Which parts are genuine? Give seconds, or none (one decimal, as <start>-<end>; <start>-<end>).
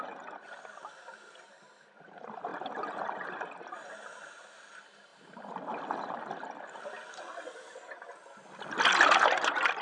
0.0-9.8